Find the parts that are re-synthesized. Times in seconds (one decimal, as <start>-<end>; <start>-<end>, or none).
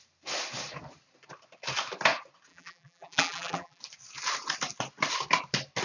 2.5-3.8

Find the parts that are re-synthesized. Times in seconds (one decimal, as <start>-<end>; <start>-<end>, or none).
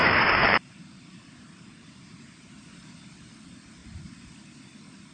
0.0-3.1; 3.8-4.3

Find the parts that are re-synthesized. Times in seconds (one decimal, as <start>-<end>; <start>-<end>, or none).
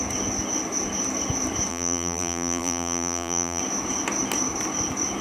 1.7-3.6